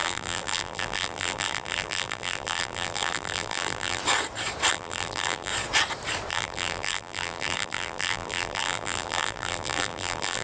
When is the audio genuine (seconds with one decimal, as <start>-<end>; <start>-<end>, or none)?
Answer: 4.0-4.7; 5.5-6.3